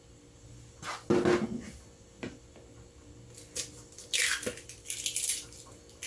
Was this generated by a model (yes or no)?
no